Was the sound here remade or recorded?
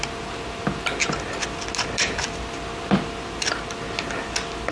recorded